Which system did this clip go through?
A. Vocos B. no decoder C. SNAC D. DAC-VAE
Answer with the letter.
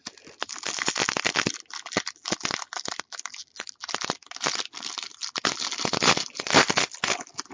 B